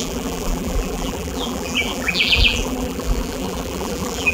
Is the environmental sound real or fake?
fake